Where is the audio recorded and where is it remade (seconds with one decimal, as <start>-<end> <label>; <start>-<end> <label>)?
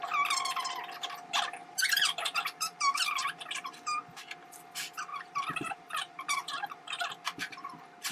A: 0.0-1.6 recorded; 1.6-3.0 remade; 3.0-5.1 recorded; 5.1-7.1 remade; 7.1-8.1 recorded